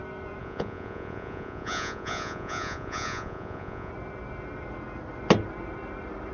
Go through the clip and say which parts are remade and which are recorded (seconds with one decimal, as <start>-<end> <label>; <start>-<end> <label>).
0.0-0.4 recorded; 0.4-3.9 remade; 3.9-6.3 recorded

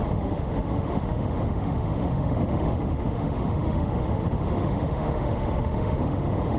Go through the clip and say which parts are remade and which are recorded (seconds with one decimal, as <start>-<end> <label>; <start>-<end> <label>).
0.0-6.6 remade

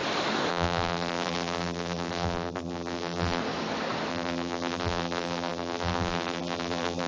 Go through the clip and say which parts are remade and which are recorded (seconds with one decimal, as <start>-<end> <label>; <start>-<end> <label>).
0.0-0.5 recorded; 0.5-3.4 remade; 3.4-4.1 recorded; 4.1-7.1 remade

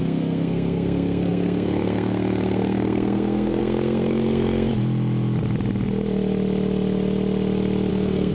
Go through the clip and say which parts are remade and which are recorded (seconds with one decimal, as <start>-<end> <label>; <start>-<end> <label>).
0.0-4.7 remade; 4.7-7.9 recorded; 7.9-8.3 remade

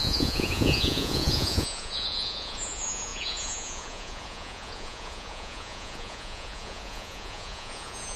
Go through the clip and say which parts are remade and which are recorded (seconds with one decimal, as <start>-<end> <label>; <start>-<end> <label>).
0.0-8.2 remade

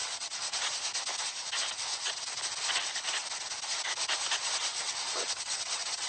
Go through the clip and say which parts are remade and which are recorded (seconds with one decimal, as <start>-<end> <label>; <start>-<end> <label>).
0.0-0.6 remade; 0.6-1.9 recorded; 1.9-2.4 remade; 2.4-4.7 recorded; 4.7-6.1 remade

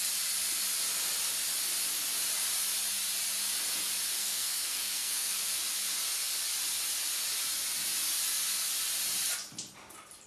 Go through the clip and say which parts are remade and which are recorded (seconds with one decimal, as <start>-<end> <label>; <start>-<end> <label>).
0.0-4.2 recorded; 4.2-5.6 remade; 5.6-10.3 recorded

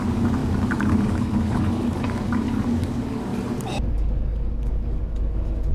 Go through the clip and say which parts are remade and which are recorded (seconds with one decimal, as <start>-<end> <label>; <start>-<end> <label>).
0.0-3.3 remade; 3.3-3.9 recorded; 3.9-5.7 remade